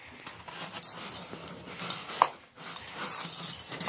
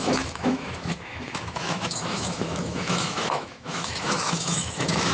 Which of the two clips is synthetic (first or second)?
second